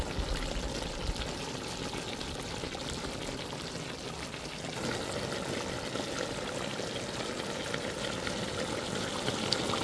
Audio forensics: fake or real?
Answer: real